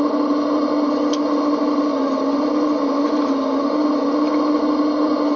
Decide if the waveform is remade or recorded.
recorded